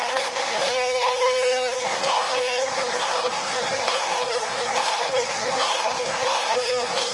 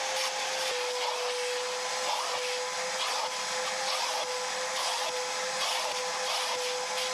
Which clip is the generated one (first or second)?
first